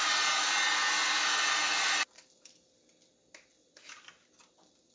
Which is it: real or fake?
real